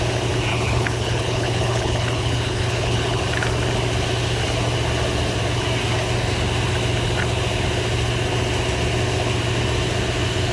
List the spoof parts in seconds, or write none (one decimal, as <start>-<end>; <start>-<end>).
0.5-3.2

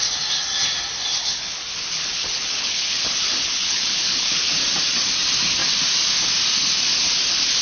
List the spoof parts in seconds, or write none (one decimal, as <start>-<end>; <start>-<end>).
1.2-4.5